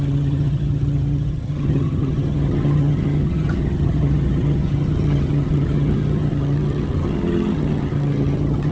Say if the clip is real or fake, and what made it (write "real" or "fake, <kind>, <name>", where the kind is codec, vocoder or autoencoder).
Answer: fake, vocoder, HiFi-GAN